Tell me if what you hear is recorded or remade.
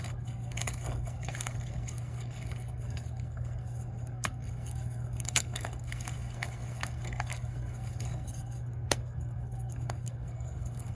remade